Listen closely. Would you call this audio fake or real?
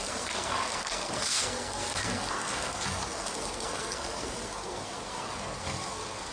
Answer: fake